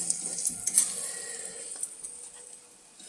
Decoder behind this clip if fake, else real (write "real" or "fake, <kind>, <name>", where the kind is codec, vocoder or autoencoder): real